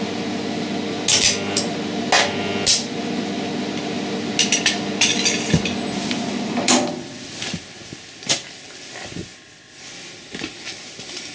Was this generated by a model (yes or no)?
no